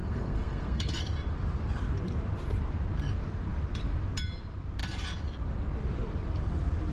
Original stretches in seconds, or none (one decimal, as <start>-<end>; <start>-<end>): 1.0-6.9